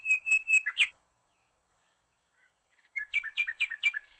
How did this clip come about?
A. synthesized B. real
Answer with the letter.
A